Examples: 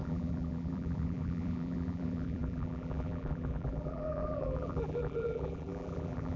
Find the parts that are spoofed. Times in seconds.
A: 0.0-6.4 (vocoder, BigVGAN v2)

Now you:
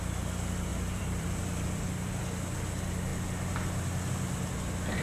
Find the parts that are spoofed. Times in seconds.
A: 0.7-2.2 (vocoder, BigVGAN v2)